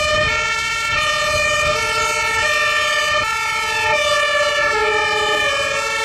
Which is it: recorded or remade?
recorded